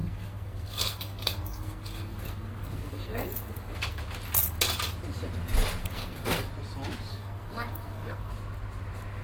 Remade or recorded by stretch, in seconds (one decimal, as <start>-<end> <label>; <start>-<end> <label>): 0.0-4.0 remade; 4.0-5.8 recorded; 5.8-6.5 remade; 6.5-7.1 recorded; 7.1-8.3 remade; 8.3-9.2 recorded